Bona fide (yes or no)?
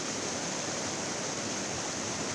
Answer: yes